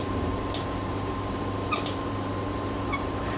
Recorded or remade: remade